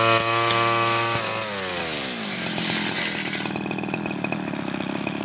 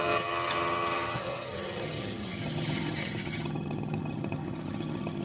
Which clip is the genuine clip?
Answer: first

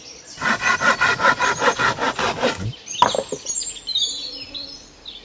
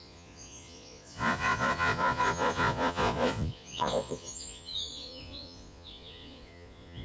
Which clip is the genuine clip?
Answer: first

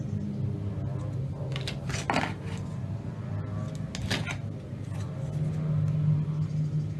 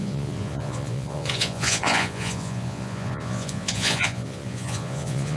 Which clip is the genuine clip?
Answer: first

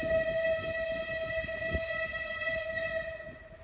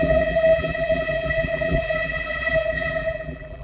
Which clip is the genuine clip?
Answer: first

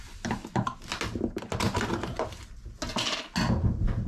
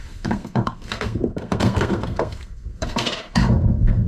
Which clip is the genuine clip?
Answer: first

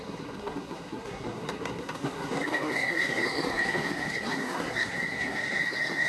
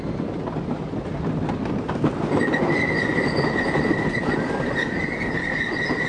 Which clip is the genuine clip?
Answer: second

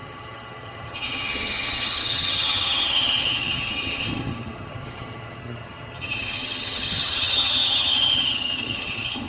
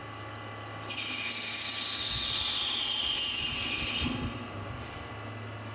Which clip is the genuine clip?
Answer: second